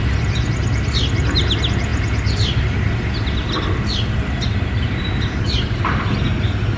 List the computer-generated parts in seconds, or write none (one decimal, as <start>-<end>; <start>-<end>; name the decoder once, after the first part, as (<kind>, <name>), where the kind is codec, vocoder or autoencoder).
none